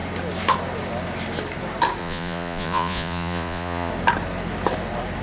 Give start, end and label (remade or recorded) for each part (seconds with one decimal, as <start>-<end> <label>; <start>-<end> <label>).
0.0-2.0 recorded; 2.0-3.9 remade; 3.9-5.2 recorded